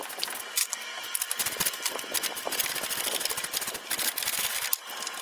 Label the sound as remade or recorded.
recorded